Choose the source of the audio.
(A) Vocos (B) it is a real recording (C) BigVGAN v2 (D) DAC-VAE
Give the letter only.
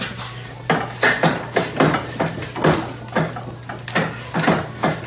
B